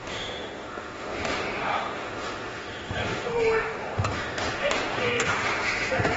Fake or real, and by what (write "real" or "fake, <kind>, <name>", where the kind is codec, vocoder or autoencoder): fake, autoencoder, DAC-VAE